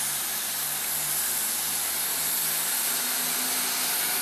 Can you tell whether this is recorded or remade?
recorded